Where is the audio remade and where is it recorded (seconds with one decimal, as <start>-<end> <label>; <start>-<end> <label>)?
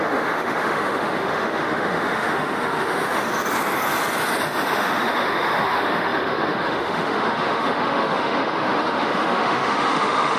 0.0-3.3 remade; 3.3-4.4 recorded; 4.4-10.4 remade